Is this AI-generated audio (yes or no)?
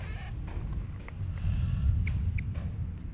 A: no